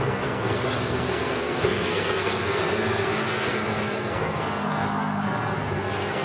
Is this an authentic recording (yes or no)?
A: no